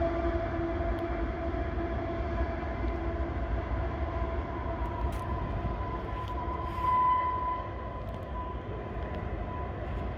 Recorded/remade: recorded